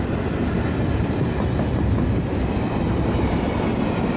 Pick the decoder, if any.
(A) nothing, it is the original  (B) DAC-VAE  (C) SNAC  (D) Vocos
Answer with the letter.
A